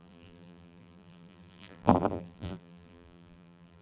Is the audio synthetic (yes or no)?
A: yes